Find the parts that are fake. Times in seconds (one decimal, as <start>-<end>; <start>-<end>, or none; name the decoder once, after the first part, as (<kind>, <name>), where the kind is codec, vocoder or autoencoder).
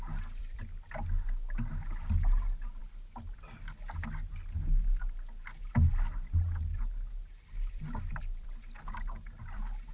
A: 0.4-0.9 (vocoder, BigVGAN v2); 6.7-9.9